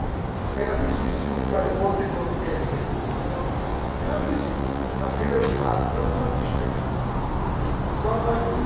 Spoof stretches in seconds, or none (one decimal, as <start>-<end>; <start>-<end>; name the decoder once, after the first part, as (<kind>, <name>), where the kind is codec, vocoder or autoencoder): 0.5-1.7 (vocoder, WaveNeXt); 3.7-6.8